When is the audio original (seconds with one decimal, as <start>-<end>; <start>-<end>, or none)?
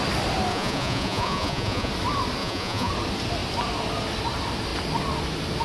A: 0.0-0.5; 1.9-2.4; 2.9-5.6